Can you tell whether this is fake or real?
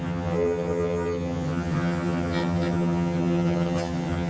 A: fake